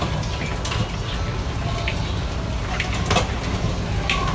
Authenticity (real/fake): real